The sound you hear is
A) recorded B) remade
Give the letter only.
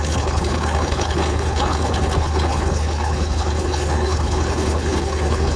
B